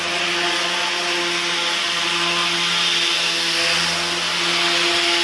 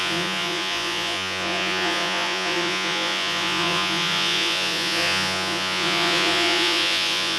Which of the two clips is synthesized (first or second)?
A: second